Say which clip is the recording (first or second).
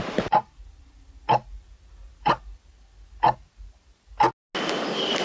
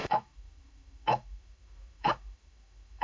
first